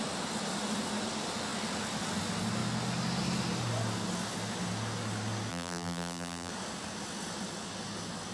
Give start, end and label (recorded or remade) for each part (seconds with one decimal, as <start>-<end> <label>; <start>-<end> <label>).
0.0-5.5 recorded; 5.5-6.5 remade; 6.5-8.3 recorded